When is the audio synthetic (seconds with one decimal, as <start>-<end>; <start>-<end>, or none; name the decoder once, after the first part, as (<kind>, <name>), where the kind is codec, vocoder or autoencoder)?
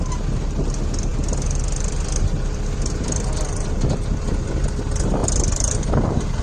1.1-4.6 (vocoder, BigVGAN v2); 5.2-5.9